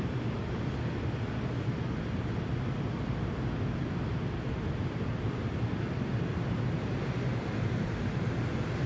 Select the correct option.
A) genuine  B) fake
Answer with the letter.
A